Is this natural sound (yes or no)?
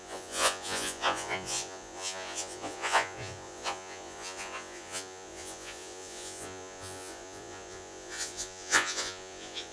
no